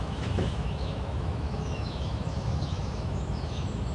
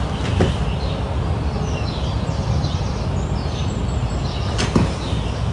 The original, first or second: second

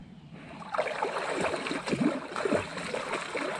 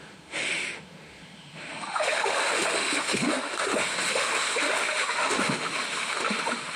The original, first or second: first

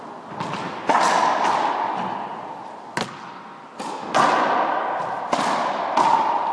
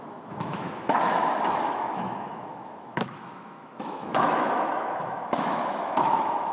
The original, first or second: first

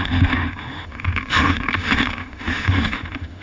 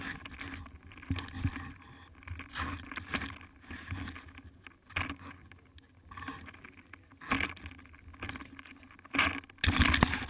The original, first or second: second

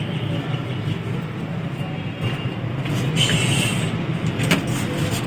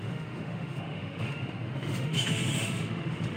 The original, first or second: first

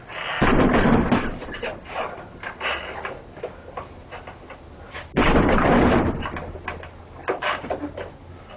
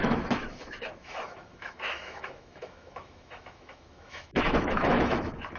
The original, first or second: first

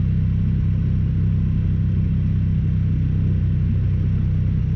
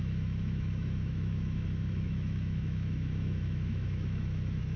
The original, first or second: first